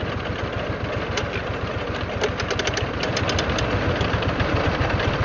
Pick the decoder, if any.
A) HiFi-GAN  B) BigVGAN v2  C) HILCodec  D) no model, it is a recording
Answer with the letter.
D